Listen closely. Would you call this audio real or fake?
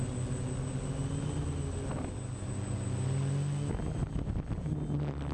real